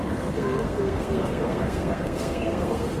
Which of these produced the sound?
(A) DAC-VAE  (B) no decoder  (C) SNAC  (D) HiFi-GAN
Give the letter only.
C